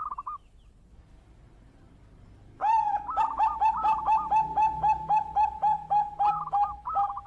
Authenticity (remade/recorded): recorded